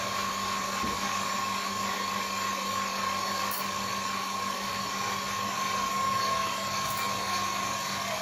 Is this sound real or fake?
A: fake